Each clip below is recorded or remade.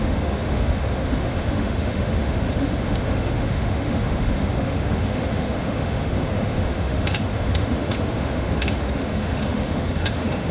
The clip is remade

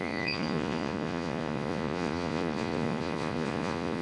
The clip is remade